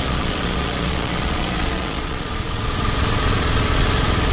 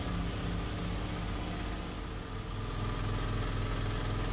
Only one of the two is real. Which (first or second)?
second